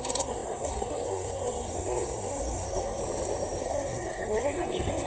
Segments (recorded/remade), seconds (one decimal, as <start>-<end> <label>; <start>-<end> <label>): 0.0-3.0 remade; 3.0-3.6 recorded; 3.6-5.1 remade